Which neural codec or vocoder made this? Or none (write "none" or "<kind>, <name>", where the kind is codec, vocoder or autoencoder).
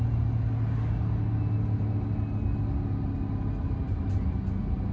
none